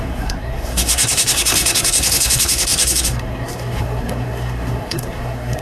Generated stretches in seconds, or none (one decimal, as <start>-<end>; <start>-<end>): 0.0-5.6